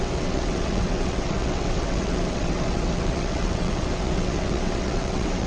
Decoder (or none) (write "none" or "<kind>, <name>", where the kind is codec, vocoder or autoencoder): vocoder, WaveNeXt